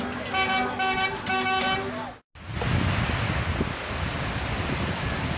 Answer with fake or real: real